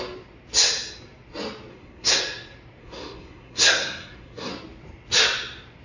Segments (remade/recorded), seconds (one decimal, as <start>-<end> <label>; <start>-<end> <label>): 0.0-1.7 recorded; 1.7-2.2 remade; 2.2-2.8 recorded; 2.8-4.5 remade; 4.5-5.8 recorded